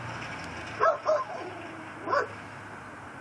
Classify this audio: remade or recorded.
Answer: recorded